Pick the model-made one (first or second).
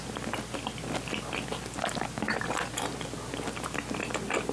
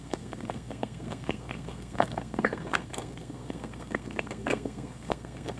second